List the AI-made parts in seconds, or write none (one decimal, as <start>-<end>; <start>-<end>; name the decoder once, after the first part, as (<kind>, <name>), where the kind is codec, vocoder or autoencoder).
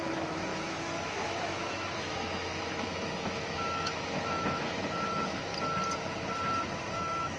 0.0-5.5 (autoencoder, DAC-VAE); 6.9-7.4